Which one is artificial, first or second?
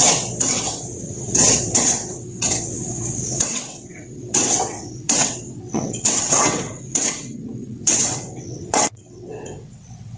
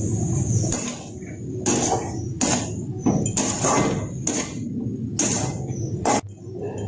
first